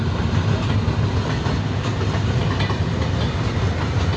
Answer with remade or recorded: recorded